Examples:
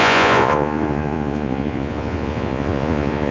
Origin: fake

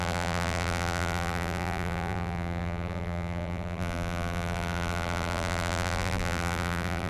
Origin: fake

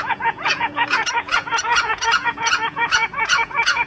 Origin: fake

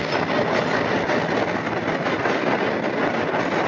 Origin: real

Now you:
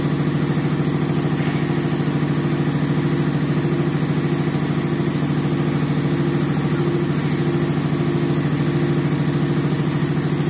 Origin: real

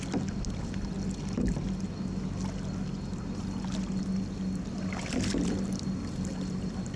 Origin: real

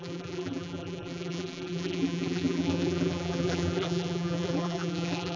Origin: fake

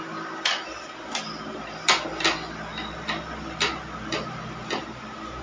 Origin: real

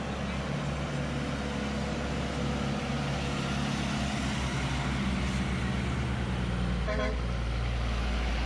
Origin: real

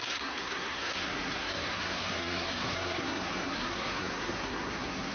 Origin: fake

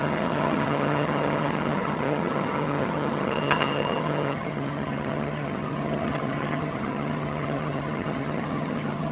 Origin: fake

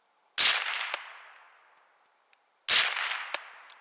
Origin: real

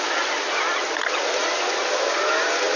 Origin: real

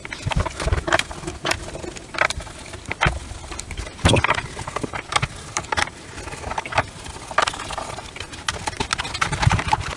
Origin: real